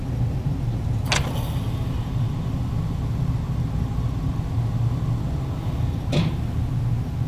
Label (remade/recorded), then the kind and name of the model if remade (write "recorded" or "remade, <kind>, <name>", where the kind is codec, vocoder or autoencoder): recorded